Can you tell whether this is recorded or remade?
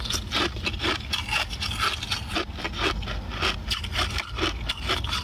recorded